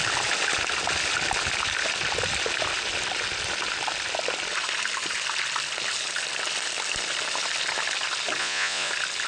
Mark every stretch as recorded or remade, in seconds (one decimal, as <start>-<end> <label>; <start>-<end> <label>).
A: 0.0-8.4 recorded; 8.4-8.9 remade; 8.9-9.3 recorded